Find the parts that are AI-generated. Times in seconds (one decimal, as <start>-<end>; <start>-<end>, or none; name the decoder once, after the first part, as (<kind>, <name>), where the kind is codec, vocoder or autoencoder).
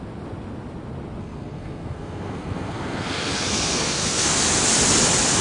1.2-4.4 (codec, SNAC)